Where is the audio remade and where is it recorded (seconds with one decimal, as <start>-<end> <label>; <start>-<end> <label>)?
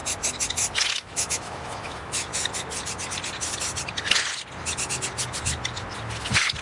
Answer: 0.0-0.9 recorded; 0.9-2.3 remade; 2.3-6.6 recorded